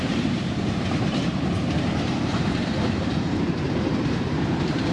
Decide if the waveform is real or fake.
fake